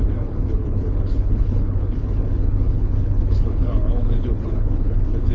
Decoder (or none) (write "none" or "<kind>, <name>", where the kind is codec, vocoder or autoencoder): codec, HILCodec